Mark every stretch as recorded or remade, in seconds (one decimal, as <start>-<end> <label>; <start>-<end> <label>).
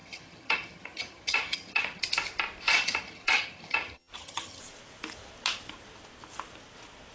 0.0-2.0 remade; 2.0-2.6 recorded; 2.6-4.6 remade; 4.6-7.1 recorded